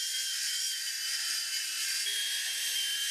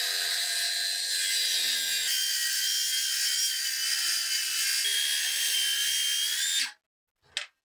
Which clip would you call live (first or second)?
second